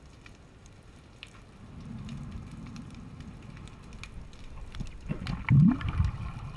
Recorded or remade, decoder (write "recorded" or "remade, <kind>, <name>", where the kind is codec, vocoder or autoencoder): recorded